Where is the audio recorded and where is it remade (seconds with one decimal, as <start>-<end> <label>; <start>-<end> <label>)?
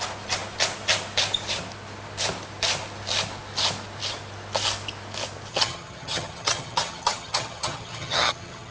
0.0-5.5 recorded; 5.5-8.7 remade